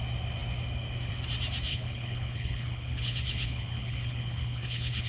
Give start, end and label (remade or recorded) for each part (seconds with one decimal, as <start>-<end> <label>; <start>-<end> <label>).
0.0-1.7 recorded; 1.7-5.1 remade